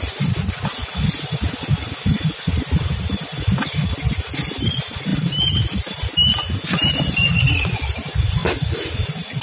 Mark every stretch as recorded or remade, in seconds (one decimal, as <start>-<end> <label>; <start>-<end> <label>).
0.0-9.4 recorded